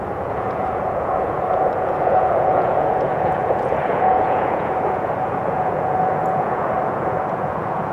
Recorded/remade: remade